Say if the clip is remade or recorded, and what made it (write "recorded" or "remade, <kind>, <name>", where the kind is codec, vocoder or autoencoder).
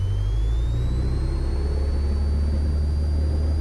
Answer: recorded